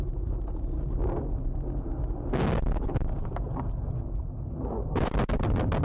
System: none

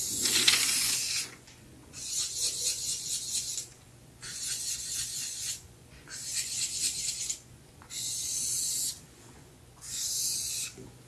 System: vocoder, Vocos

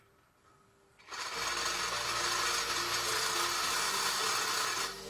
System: none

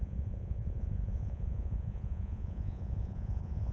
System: vocoder, Vocos